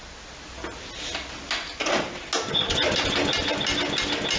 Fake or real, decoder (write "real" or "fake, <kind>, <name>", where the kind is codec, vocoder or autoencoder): real